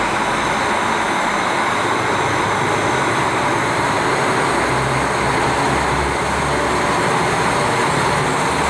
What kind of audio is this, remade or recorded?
recorded